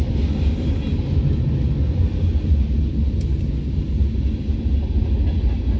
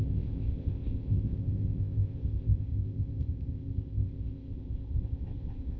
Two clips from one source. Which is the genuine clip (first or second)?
first